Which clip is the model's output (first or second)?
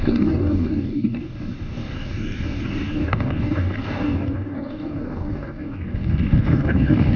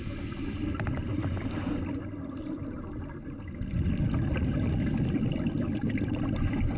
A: first